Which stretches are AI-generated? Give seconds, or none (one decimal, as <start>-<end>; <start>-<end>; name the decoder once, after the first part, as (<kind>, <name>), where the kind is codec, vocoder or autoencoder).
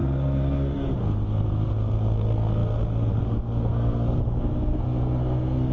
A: 0.0-5.7 (codec, SNAC)